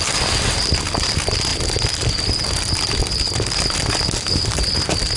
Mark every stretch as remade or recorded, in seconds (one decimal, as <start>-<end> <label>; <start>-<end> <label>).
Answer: 0.0-5.2 recorded